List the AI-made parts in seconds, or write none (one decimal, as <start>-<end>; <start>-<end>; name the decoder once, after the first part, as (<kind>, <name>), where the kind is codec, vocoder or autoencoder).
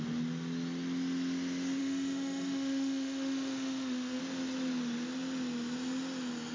1.8-4.2 (autoencoder, DAC-VAE)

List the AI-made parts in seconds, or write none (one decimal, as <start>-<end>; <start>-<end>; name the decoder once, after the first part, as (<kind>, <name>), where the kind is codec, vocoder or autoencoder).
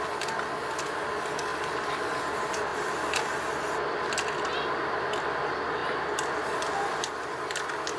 none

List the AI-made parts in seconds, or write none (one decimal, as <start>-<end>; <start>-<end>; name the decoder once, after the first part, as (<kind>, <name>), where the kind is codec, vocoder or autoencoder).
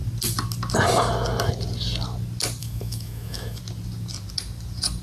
2.6-3.6 (autoencoder, DAC-VAE)